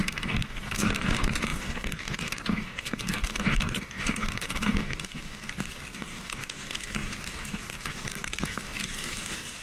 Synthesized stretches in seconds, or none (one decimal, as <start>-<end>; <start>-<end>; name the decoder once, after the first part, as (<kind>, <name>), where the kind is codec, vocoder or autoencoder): 0.0-9.6 (codec, DAC)